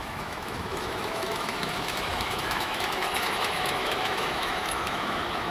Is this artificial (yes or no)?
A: yes